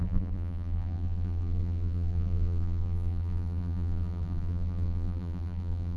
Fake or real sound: fake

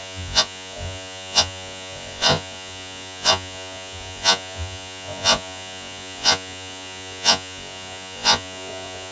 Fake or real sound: fake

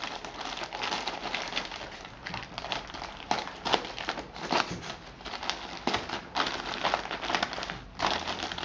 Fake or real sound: real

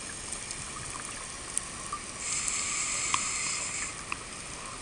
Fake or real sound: real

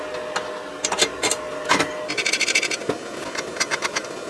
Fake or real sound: real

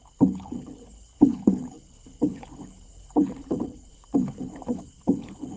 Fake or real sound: fake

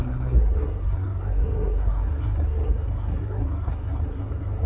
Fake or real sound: fake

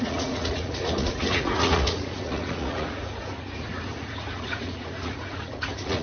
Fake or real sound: fake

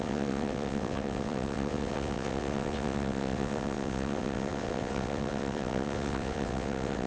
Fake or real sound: fake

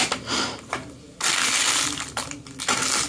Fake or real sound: real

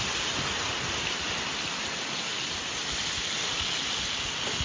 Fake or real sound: real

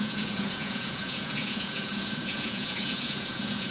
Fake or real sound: fake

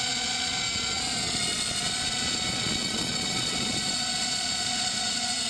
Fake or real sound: fake